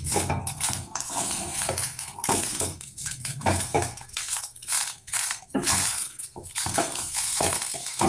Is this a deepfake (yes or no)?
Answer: yes